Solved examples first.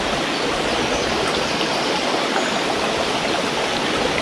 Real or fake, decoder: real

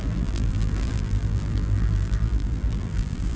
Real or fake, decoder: fake, vocoder, BigVGAN v2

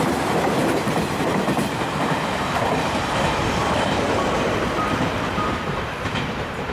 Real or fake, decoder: fake, vocoder, BigVGAN v2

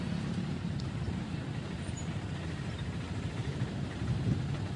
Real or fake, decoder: fake, vocoder, BigVGAN v2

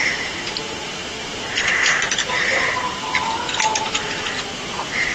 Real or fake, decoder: real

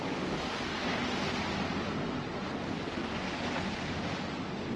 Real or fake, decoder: real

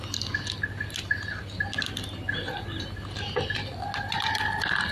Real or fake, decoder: real